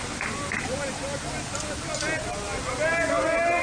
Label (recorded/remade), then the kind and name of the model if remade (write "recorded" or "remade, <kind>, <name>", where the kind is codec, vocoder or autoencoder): recorded